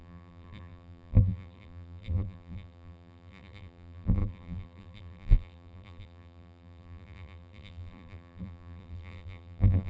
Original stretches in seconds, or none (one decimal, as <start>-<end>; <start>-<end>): none